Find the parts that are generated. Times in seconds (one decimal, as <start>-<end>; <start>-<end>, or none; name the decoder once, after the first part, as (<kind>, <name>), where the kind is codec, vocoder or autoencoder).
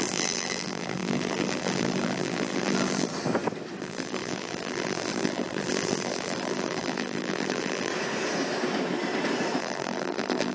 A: 0.0-3.1 (vocoder, BigVGAN v2); 3.8-7.9; 9.6-10.5